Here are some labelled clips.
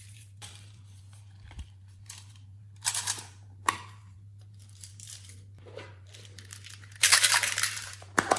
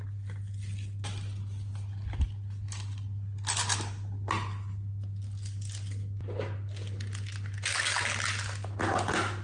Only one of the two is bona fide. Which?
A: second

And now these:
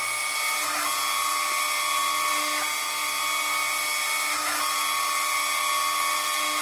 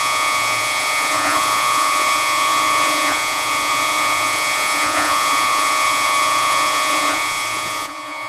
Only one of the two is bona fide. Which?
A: first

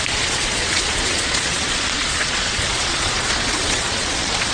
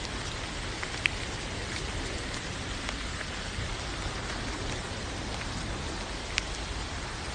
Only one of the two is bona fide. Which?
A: second